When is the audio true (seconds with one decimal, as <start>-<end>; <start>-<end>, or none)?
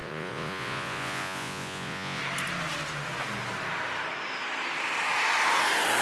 2.2-6.0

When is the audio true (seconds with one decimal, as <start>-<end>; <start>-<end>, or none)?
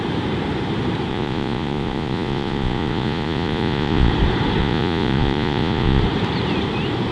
0.0-1.1; 4.1-4.6; 6.0-7.1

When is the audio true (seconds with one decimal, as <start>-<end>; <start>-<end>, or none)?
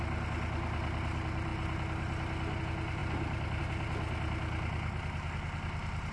0.0-6.1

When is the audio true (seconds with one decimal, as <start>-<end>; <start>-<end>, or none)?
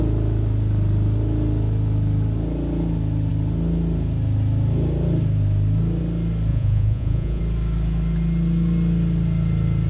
0.0-6.5; 7.4-9.9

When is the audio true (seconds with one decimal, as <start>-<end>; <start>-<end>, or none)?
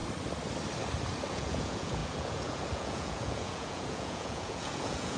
0.0-1.3